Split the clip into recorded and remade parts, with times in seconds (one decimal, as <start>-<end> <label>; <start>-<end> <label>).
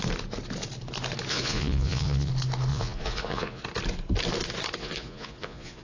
0.0-1.3 recorded; 1.3-2.3 remade; 2.3-2.7 recorded; 2.7-3.6 remade; 3.6-4.8 recorded; 4.8-5.8 remade